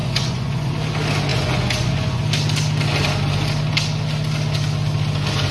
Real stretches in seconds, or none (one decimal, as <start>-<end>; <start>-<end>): 0.7-1.3; 2.2-5.5